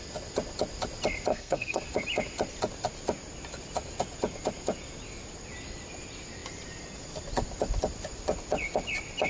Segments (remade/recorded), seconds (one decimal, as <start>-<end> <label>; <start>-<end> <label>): 0.0-1.3 recorded; 1.3-1.8 remade; 1.8-9.3 recorded

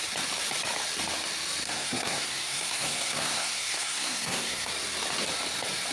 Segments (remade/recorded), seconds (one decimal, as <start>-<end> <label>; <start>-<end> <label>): 0.0-1.6 recorded; 1.6-4.7 remade; 4.7-5.9 recorded

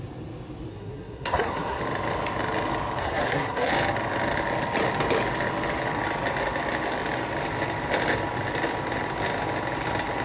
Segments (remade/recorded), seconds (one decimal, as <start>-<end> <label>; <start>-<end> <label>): 0.0-0.7 recorded; 0.7-1.8 remade; 1.8-3.0 recorded; 3.0-3.7 remade; 3.7-10.2 recorded